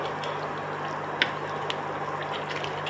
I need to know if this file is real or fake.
real